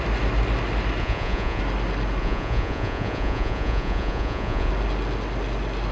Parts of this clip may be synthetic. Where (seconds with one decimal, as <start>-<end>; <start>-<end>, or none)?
1.0-1.6; 2.2-4.7